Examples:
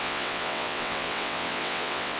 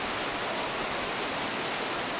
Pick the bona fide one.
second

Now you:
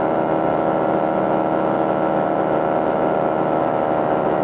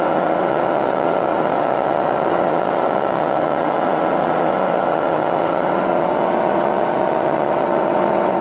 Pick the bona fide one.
first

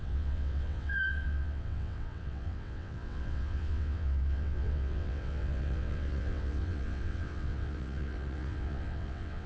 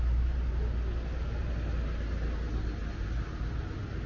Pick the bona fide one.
second